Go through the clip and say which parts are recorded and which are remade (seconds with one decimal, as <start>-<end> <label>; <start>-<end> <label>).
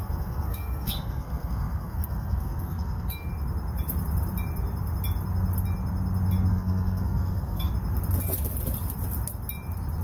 0.0-3.3 remade; 3.3-6.5 recorded; 6.5-7.7 remade; 7.7-10.0 recorded